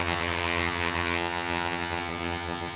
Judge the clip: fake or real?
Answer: fake